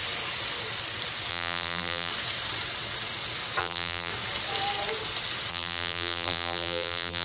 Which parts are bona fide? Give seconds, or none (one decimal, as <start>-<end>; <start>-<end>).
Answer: 0.0-1.3; 2.1-3.6; 4.1-5.5